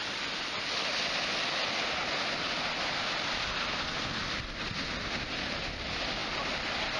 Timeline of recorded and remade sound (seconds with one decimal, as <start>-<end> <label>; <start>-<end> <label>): 0.0-7.0 recorded